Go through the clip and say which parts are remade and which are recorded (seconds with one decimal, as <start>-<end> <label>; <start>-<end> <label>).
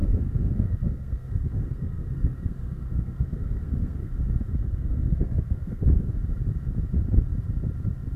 0.0-4.1 remade; 4.1-4.6 recorded; 4.6-6.1 remade; 6.1-8.2 recorded